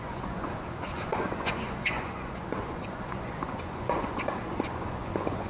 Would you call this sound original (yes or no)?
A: no